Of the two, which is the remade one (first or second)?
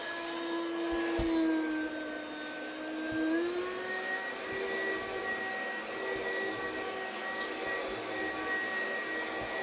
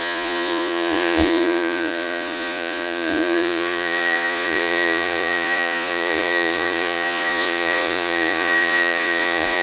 second